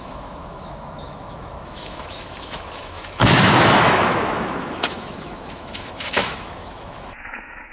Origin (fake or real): fake